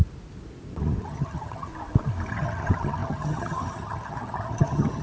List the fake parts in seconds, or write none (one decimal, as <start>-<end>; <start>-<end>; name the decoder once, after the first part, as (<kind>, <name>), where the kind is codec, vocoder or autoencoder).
1.0-1.7 (vocoder, HiFi-GAN); 2.3-5.0